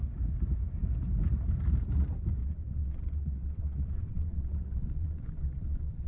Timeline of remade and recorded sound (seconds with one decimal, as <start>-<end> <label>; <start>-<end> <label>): 0.0-2.4 recorded; 2.4-6.1 remade